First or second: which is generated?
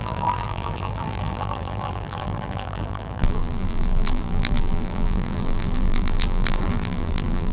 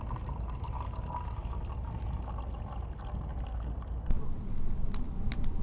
first